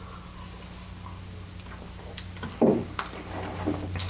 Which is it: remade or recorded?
recorded